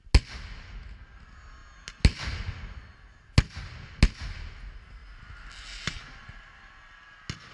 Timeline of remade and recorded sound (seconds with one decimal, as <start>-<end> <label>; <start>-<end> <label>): 0.0-7.5 recorded

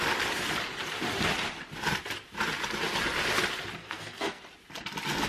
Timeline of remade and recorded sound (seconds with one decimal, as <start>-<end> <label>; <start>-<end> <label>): 0.0-3.8 recorded; 3.8-4.4 remade; 4.4-5.3 recorded

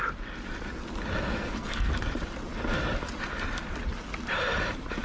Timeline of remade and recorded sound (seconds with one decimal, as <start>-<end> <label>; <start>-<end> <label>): 0.0-1.3 recorded; 1.3-1.9 remade; 1.9-5.0 recorded

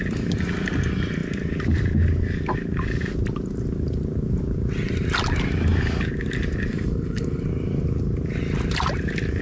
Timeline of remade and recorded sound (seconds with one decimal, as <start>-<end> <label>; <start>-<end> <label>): 0.0-6.7 recorded; 6.7-7.4 remade; 7.4-9.4 recorded

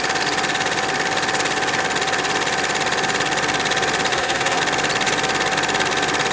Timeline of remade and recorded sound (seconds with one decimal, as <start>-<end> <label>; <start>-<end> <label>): 0.0-4.1 recorded; 4.1-4.6 remade; 4.6-6.3 recorded

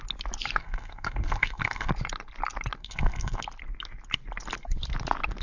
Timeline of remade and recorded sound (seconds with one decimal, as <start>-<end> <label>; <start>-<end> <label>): 0.0-0.6 recorded; 0.6-1.9 remade; 1.9-2.8 recorded; 2.8-3.4 remade; 3.4-5.4 recorded

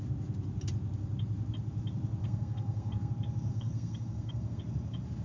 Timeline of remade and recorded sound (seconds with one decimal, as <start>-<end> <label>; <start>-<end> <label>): 0.0-2.2 recorded; 2.2-3.1 remade; 3.1-3.5 recorded; 3.5-4.6 remade; 4.6-5.2 recorded